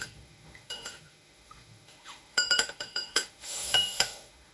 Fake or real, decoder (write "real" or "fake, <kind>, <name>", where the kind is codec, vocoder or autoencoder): fake, autoencoder, DAC-VAE